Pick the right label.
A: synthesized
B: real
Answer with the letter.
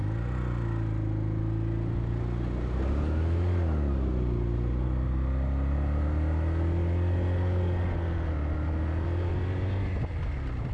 B